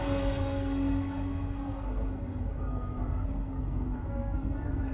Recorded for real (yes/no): no